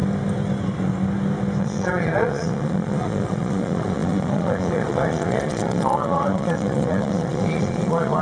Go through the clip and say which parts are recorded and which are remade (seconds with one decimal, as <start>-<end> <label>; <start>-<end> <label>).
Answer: 0.0-1.6 recorded; 1.6-8.2 remade